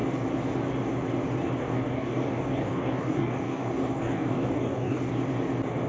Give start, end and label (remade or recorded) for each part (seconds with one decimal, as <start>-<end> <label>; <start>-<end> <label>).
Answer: 0.0-1.6 recorded; 1.6-5.1 remade; 5.1-5.9 recorded